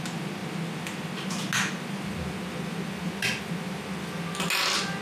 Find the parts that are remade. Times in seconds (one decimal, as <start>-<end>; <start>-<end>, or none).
none